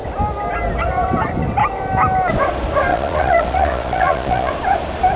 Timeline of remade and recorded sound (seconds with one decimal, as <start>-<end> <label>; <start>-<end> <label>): 0.0-2.9 recorded; 2.9-4.5 remade; 4.5-5.2 recorded